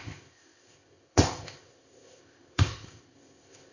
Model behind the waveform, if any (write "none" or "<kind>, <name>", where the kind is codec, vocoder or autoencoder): codec, ZipCodec